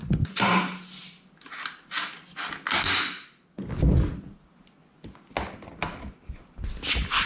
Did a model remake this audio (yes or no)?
no